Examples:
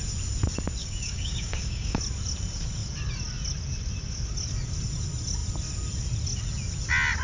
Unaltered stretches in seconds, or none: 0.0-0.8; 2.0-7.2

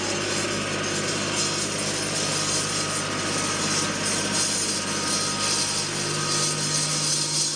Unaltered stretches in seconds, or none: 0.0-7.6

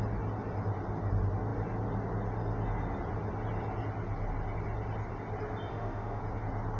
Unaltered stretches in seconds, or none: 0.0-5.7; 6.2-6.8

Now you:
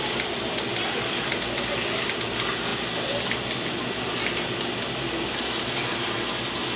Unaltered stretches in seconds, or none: 0.0-6.8